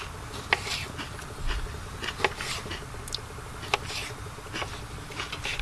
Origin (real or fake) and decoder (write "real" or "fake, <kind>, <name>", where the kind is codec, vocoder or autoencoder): real